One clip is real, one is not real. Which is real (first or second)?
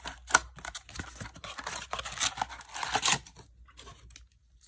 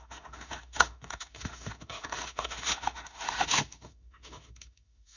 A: first